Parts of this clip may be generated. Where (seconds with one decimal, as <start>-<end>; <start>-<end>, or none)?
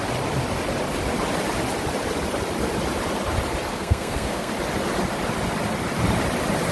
3.7-4.5